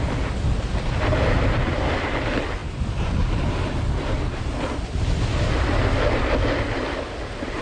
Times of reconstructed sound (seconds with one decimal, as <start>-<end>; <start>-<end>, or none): none